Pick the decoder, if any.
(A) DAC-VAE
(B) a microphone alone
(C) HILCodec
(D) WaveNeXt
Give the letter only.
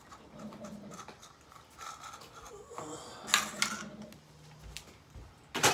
B